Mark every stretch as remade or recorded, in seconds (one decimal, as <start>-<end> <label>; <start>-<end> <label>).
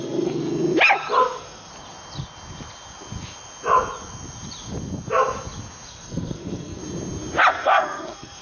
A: 0.0-0.4 remade; 0.4-1.2 recorded; 1.2-1.7 remade; 1.7-5.9 recorded; 5.9-6.8 remade; 6.8-7.5 recorded; 7.5-8.4 remade